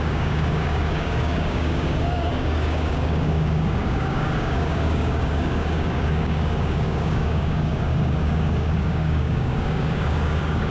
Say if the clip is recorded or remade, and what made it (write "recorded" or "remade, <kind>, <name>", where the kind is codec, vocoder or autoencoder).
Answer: remade, codec, DAC